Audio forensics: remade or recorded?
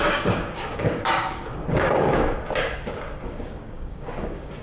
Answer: remade